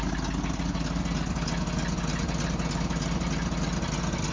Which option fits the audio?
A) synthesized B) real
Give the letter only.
B